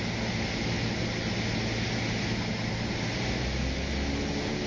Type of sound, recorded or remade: recorded